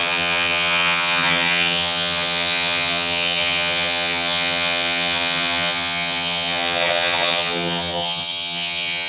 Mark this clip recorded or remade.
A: remade